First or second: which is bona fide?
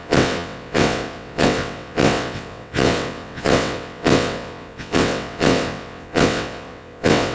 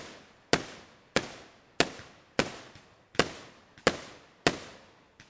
second